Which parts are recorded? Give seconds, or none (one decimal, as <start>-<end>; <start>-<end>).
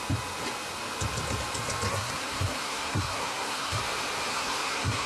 0.0-1.9; 3.8-4.3